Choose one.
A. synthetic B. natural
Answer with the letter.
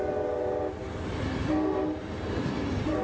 B